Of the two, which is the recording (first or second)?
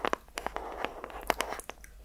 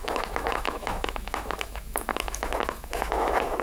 first